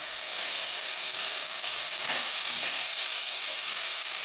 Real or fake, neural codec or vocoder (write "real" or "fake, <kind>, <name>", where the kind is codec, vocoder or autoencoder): fake, codec, DAC